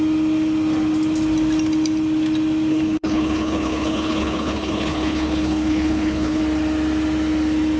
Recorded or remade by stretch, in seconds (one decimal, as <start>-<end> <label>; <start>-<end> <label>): 0.0-2.7 recorded; 2.7-6.4 remade; 6.4-7.8 recorded